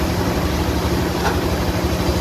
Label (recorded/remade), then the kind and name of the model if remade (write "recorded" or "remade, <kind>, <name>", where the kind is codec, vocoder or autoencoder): recorded